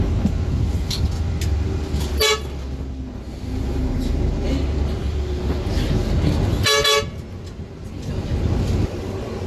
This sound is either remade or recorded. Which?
recorded